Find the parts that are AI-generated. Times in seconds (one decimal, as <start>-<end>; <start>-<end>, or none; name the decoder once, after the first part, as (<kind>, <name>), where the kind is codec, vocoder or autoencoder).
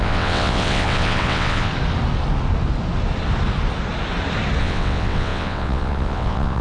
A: 0.0-1.7 (vocoder, WaveNeXt); 4.6-6.6